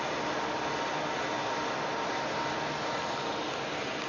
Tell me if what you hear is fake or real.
real